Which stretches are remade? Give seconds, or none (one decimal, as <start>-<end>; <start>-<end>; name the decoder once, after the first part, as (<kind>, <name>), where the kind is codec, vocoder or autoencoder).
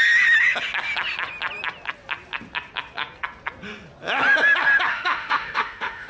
4.9-6.1 (autoencoder, DAC-VAE)